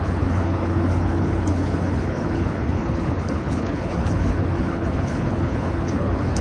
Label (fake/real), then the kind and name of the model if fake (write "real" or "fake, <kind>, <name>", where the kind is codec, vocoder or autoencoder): fake, codec, HILCodec